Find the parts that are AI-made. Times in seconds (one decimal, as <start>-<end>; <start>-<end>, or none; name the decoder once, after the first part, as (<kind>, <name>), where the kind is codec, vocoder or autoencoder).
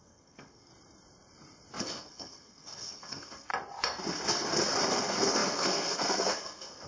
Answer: 0.0-0.7 (codec, SNAC); 1.8-3.5; 4.9-6.9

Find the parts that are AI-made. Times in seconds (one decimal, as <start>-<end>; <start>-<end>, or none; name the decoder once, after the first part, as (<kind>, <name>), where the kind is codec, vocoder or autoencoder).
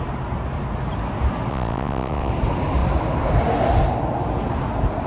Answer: 1.5-2.3 (vocoder, WaveNeXt)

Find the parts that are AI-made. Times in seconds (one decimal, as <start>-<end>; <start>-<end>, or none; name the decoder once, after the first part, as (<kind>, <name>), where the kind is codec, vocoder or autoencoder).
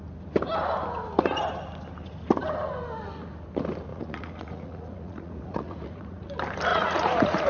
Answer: 3.9-6.3 (vocoder, Vocos); 6.7-7.5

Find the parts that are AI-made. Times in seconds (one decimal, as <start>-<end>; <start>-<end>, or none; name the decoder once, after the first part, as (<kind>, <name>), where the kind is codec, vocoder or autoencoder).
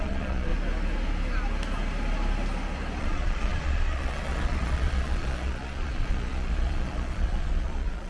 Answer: 0.0-0.5 (vocoder, Vocos); 3.0-8.1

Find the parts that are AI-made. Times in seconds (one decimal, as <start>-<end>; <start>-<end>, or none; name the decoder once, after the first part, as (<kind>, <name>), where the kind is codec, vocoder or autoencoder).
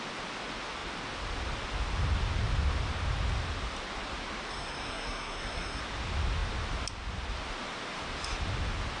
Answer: 4.5-5.8 (codec, SNAC)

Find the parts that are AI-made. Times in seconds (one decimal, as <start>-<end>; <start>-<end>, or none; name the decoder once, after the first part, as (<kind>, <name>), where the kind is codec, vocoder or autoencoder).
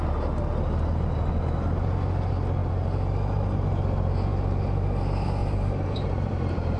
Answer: 5.4-6.8 (vocoder, BigVGAN v2)